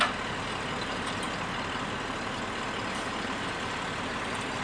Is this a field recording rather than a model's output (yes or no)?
yes